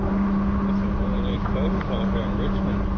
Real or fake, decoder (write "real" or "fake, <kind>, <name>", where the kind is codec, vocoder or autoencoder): real